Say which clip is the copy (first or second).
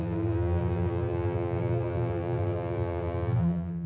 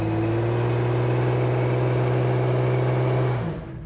first